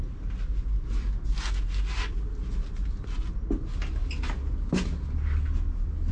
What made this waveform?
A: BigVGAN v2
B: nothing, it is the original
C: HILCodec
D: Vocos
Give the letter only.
B